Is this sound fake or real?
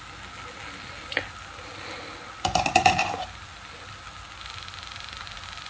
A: real